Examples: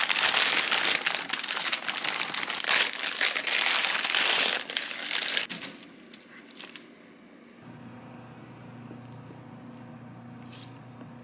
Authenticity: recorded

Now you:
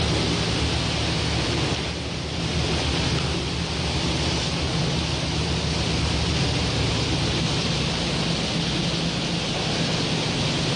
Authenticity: recorded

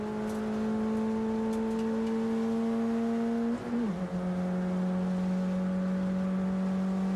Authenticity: recorded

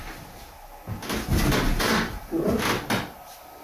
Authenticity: recorded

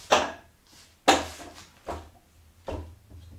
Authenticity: recorded